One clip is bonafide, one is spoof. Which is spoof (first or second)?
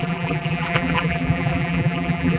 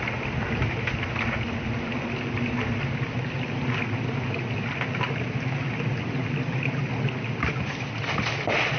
first